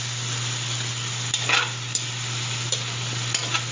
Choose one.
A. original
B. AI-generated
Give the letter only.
A